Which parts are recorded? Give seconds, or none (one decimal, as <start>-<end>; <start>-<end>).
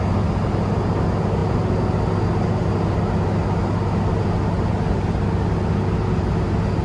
0.0-6.8